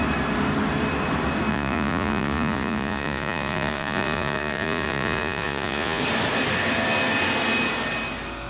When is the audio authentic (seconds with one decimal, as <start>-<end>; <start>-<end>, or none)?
0.0-1.5; 6.0-8.5